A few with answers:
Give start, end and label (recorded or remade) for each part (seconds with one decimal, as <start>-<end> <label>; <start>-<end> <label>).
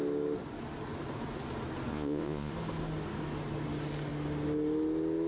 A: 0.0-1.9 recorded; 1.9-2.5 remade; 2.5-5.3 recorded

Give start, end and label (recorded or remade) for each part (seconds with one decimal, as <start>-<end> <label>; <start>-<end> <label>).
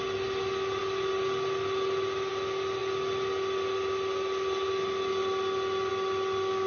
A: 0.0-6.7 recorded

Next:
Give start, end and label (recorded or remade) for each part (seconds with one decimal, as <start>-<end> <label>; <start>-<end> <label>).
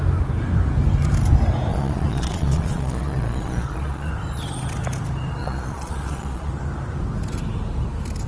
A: 0.0-1.7 recorded; 1.7-4.1 remade; 4.1-5.4 recorded; 5.4-6.5 remade; 6.5-8.3 recorded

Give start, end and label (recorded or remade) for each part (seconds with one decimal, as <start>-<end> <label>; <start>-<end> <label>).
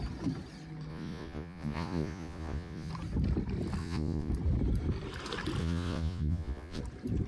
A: 0.0-0.9 recorded; 0.9-2.9 remade; 2.9-3.8 recorded; 3.8-4.3 remade; 4.3-5.6 recorded; 5.6-6.8 remade; 6.8-7.3 recorded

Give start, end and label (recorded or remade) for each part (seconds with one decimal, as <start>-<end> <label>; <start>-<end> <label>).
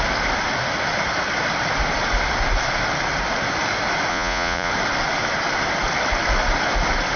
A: 0.0-4.1 recorded; 4.1-4.7 remade; 4.7-7.2 recorded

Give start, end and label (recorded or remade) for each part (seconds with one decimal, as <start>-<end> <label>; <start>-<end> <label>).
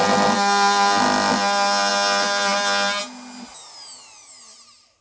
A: 0.0-5.0 recorded